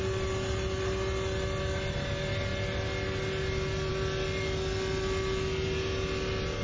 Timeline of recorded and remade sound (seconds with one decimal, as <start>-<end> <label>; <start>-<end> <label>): 0.0-6.6 recorded